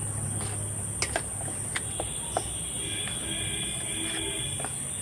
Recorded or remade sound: recorded